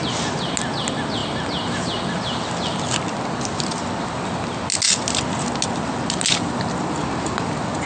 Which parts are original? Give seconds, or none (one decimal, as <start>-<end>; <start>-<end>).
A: 0.0-7.9